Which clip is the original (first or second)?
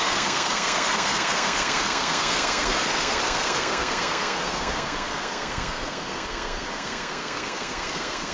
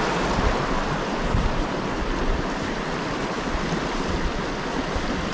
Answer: second